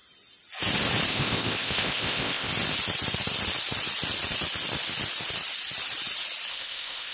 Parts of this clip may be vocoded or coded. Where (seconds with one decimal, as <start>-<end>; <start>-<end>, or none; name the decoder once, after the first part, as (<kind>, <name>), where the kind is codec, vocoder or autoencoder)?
1.1-2.5 (codec, ZipCodec); 6.5-7.1